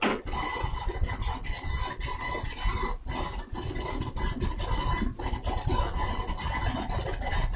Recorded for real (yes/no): yes